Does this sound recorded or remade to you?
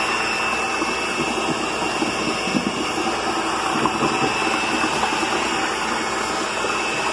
recorded